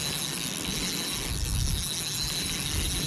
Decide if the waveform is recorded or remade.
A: recorded